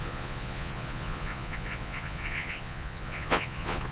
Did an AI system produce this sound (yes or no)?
yes